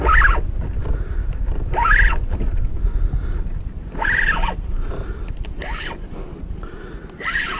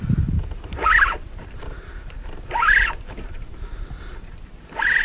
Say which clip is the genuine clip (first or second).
first